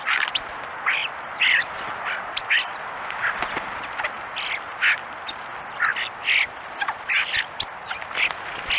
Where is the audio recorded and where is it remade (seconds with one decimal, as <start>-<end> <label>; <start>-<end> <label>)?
0.0-8.8 recorded

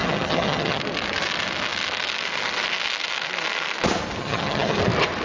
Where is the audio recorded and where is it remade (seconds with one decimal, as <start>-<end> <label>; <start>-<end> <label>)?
0.0-0.8 remade; 0.8-4.2 recorded; 4.2-4.8 remade; 4.8-5.2 recorded